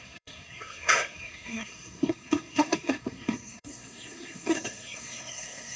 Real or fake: fake